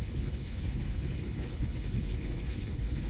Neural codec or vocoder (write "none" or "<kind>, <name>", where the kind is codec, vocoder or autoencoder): codec, HILCodec